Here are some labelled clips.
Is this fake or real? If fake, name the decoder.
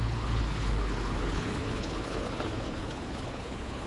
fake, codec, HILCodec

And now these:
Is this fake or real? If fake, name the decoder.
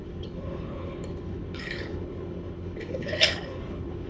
fake, codec, HILCodec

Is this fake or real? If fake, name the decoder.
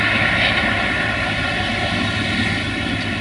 real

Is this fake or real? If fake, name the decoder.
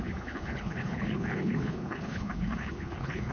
fake, codec, HILCodec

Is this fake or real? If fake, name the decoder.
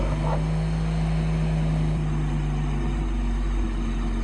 real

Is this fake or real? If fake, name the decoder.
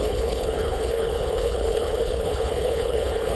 fake, codec, HILCodec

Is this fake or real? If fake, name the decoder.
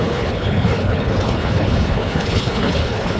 fake, codec, HILCodec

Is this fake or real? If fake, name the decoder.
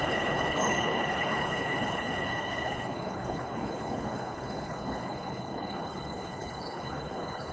fake, codec, HILCodec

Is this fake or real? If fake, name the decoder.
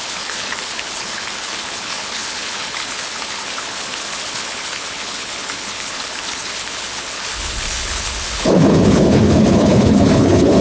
fake, codec, HILCodec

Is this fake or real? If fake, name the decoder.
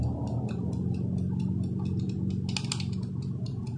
real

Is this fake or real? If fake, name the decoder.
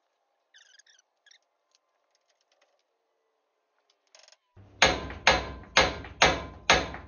real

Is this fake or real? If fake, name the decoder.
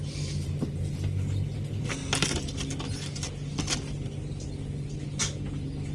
real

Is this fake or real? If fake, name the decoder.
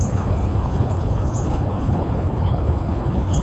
fake, codec, HILCodec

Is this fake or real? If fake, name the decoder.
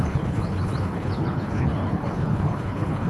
fake, codec, HILCodec